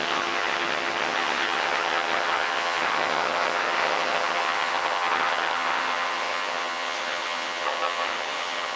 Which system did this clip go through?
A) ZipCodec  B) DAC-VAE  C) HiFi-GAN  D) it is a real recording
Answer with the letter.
C